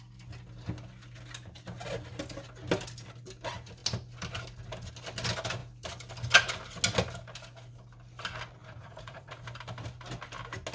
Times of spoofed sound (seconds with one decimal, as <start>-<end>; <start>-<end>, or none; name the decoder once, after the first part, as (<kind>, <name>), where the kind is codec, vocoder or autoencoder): 8.6-9.4 (vocoder, Vocos)